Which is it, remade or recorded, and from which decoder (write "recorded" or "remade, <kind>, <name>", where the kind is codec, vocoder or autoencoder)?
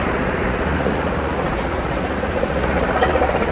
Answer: remade, vocoder, Vocos